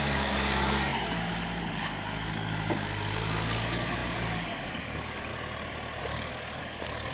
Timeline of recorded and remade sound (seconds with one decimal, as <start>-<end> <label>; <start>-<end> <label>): 0.0-5.3 remade; 5.3-6.0 recorded; 6.0-7.1 remade